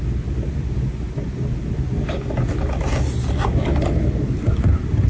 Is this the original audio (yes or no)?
yes